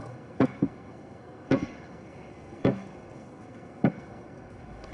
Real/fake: fake